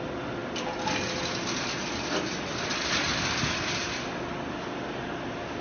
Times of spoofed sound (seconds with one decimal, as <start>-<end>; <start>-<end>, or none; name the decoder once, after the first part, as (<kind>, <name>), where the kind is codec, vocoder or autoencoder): none